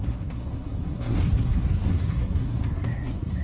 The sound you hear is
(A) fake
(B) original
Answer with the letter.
A